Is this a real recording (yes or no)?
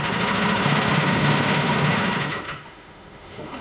no